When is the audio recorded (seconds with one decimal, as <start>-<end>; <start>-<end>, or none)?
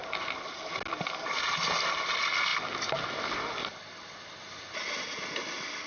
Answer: 0.0-5.9